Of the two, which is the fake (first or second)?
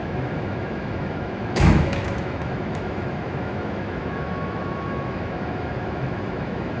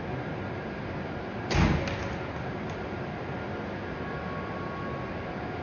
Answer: first